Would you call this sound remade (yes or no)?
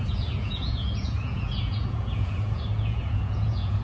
yes